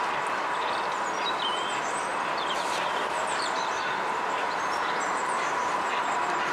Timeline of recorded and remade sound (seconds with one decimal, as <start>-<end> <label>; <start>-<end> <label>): 0.0-2.1 recorded; 2.1-6.0 remade; 6.0-6.5 recorded